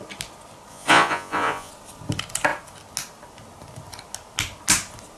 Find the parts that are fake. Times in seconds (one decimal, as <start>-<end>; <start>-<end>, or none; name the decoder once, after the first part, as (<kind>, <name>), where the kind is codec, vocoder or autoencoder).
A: 0.7-1.7 (vocoder, Vocos)